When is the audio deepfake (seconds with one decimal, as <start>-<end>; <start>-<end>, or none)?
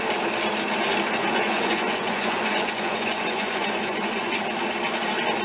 1.2-4.4